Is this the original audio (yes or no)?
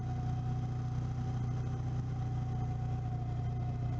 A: yes